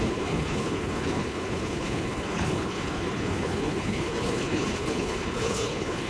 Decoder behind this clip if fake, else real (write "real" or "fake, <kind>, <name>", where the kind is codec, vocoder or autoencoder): fake, codec, HILCodec